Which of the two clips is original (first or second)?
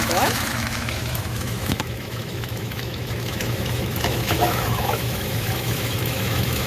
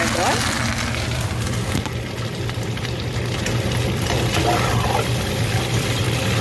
second